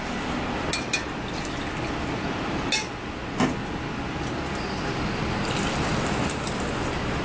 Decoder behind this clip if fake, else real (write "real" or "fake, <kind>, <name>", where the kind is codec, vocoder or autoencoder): real